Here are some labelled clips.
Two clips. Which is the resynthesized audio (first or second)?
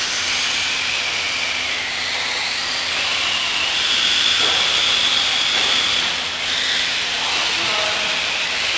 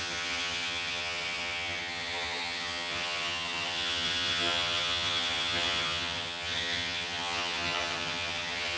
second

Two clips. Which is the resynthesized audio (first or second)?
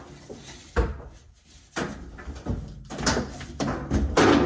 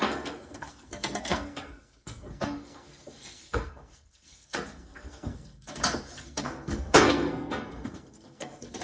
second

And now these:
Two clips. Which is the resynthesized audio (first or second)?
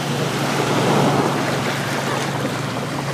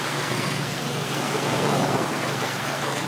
second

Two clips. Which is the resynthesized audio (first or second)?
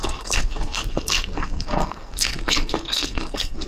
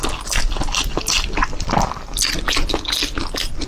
first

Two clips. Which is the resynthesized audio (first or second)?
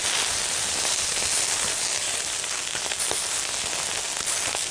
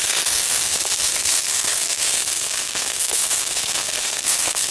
second